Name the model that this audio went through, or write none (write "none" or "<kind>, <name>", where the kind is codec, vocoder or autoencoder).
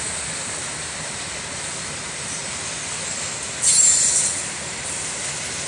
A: none